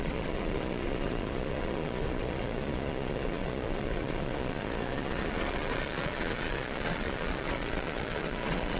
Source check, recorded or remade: remade